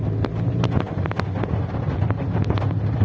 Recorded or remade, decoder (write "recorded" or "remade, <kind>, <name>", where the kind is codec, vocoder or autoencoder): recorded